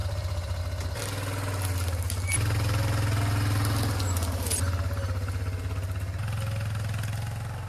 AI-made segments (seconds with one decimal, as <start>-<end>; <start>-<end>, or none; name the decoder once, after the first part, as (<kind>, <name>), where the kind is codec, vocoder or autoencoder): 0.0-0.6 (vocoder, BigVGAN v2)